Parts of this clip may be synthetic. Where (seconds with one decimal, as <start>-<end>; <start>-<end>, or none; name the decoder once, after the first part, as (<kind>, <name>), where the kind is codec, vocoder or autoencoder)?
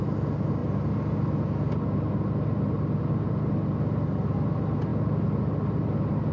none